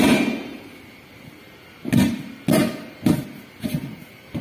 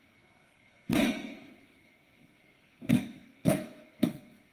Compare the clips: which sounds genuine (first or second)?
first